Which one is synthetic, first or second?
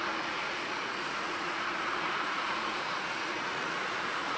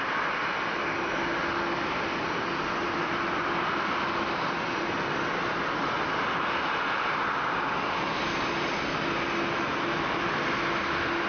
first